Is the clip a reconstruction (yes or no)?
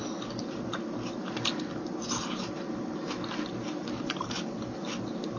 no